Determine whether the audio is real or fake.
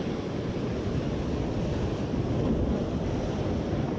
real